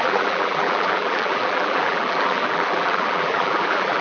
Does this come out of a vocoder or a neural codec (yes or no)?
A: yes